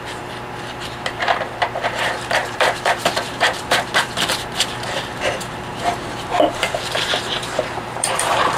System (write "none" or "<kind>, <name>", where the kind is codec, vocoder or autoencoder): vocoder, BigVGAN v2